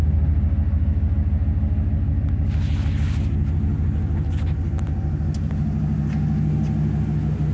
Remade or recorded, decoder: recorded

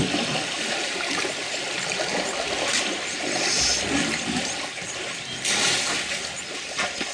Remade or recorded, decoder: recorded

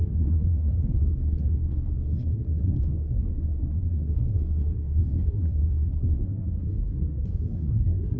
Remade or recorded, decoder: remade, codec, SNAC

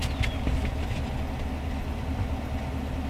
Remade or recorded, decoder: recorded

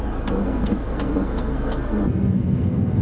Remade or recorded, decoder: remade, codec, SNAC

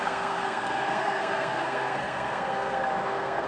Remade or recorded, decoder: remade, codec, SNAC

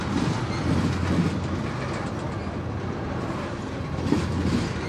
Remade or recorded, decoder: recorded